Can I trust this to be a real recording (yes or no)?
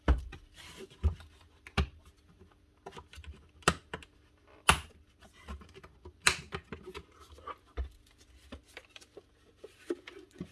yes